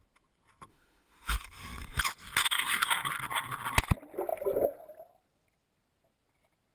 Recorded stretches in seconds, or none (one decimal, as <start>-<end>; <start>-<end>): 0.0-0.7; 2.0-2.4; 2.9-6.7